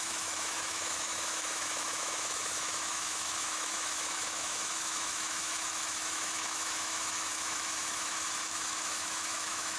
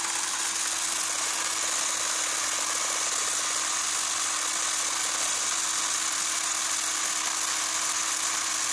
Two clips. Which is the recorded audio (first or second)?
second